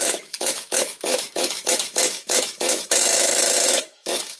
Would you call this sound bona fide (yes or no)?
no